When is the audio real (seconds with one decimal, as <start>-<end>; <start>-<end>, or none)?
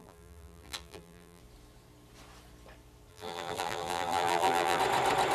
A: 1.4-3.1; 4.8-5.3